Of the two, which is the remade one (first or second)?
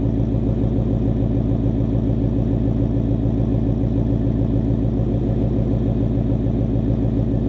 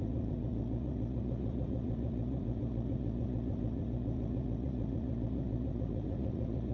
second